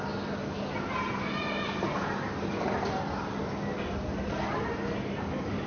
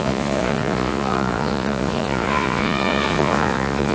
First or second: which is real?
first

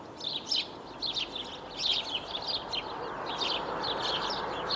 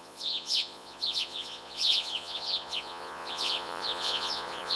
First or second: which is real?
first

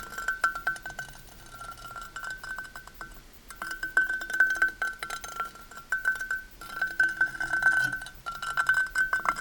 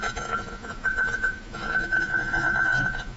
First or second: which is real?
first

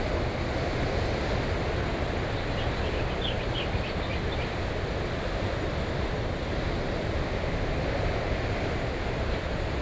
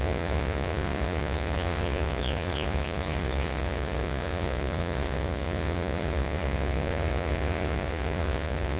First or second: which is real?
first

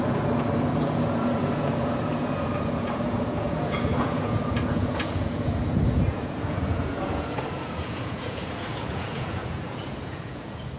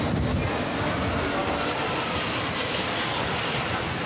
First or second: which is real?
second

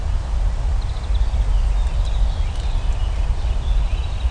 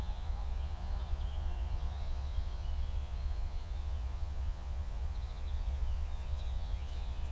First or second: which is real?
first